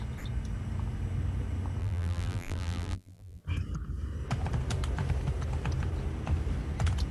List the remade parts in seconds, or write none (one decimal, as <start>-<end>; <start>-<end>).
1.8-3.4